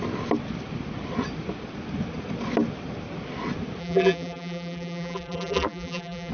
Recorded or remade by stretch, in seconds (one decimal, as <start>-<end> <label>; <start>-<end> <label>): 0.0-3.8 recorded; 3.8-6.3 remade